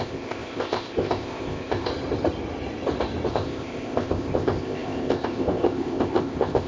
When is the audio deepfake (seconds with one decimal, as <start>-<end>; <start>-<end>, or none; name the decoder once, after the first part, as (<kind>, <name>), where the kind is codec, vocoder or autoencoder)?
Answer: 0.0-1.9 (codec, ZipCodec); 3.3-6.7